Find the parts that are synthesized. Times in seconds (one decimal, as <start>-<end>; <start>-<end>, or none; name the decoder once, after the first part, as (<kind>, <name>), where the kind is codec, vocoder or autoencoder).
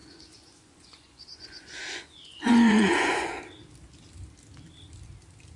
0.0-3.4 (vocoder, Vocos)